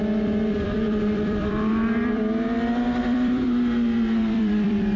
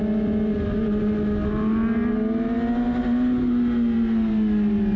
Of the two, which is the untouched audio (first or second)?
second